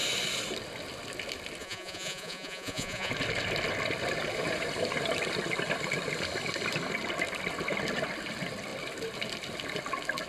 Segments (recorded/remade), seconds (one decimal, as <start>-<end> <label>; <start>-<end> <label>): 0.0-1.6 recorded; 1.6-3.1 remade; 3.1-10.3 recorded